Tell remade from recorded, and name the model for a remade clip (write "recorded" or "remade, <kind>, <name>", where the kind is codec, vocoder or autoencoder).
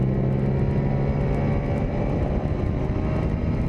recorded